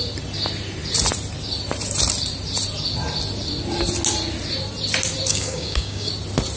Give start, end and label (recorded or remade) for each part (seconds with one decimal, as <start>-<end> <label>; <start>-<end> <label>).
0.0-5.3 recorded; 5.3-6.1 remade; 6.1-6.6 recorded